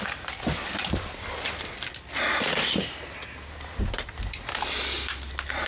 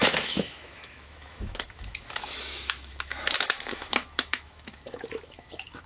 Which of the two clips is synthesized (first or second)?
second